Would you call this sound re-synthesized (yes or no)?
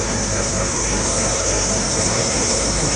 yes